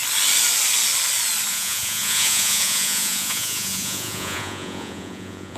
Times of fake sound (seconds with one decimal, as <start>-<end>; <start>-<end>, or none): 1.5-5.6